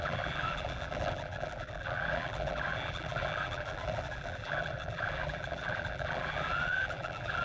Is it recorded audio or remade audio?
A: remade